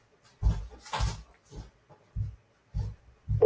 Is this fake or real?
real